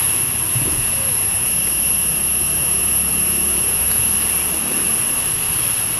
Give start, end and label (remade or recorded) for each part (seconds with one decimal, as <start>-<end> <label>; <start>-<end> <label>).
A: 0.0-0.5 recorded; 0.5-4.1 remade; 4.1-6.0 recorded